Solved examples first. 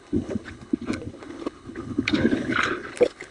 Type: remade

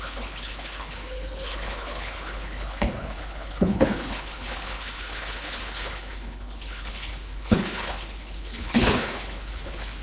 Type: remade